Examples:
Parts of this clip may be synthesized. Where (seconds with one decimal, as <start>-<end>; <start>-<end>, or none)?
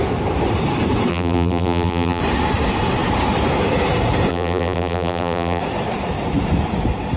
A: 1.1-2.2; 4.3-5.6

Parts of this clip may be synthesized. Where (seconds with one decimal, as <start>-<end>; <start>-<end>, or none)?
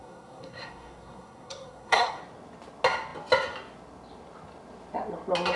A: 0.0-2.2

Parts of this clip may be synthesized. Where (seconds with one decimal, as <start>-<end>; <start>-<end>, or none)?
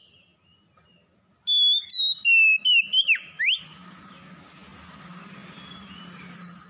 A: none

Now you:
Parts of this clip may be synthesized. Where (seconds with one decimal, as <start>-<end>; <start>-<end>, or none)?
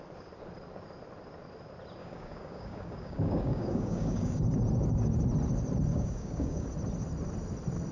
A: 2.0-4.4; 5.9-6.7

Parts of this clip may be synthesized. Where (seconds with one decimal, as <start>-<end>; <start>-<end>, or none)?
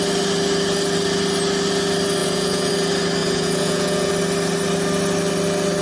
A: 2.2-2.7; 3.2-4.1